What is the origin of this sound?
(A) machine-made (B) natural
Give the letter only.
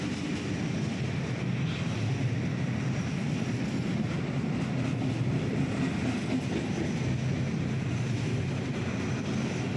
B